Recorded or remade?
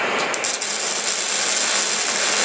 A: recorded